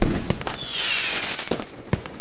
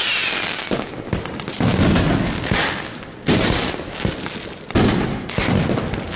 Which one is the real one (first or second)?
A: second